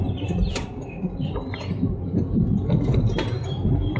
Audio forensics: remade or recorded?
remade